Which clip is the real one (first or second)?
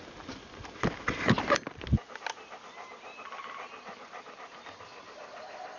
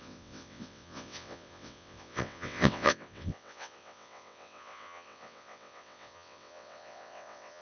first